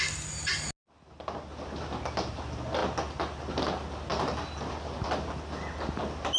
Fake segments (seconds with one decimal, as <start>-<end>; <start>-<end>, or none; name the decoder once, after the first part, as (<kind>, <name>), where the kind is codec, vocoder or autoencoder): none